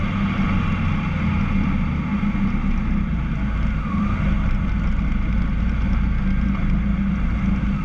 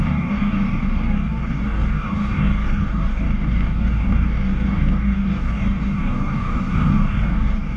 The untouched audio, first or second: first